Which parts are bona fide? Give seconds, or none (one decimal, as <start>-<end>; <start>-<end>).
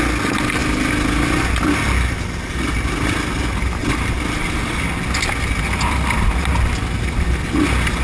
0.0-8.0